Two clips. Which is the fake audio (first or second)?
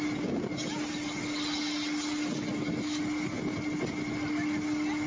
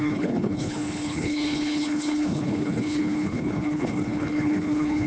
second